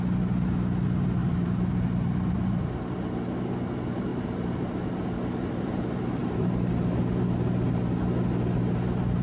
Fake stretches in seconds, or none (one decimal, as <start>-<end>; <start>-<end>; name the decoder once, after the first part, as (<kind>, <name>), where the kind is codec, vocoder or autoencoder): 1.2-2.9 (vocoder, BigVGAN v2); 4.1-6.7

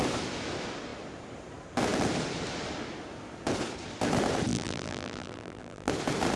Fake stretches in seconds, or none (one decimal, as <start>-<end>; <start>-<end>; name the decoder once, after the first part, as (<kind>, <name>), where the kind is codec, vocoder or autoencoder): 4.5-5.9 (vocoder, BigVGAN v2)

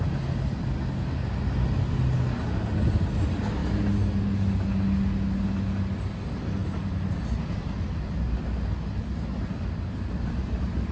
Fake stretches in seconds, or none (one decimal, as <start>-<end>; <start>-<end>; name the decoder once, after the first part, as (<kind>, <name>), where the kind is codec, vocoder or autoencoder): 6.6-7.2 (vocoder, BigVGAN v2)